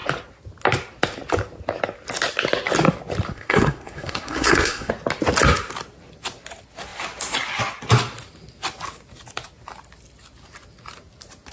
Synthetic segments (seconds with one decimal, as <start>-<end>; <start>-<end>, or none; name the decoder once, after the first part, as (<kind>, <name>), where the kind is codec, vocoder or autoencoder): 3.3-4.9 (codec, SNAC)